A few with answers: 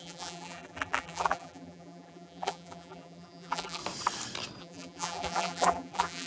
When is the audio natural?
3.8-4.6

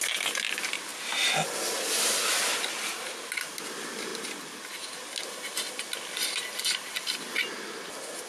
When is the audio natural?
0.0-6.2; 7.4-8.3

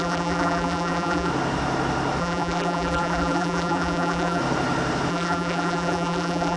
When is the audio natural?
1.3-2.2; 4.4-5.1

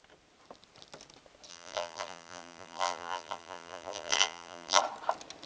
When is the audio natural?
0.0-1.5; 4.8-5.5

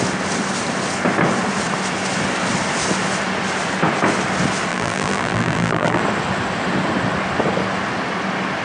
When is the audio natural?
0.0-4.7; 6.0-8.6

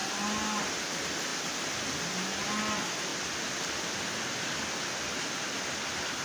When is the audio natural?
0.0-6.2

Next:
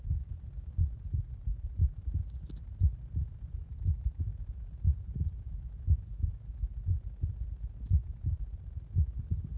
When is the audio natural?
0.0-9.6